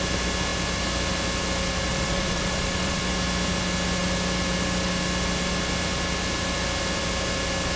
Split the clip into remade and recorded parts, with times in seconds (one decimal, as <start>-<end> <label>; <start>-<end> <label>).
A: 0.0-1.9 recorded; 1.9-3.0 remade; 3.0-7.8 recorded